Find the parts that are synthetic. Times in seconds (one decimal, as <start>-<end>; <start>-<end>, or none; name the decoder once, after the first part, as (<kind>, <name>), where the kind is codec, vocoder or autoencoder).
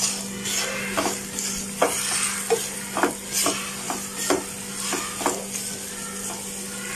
none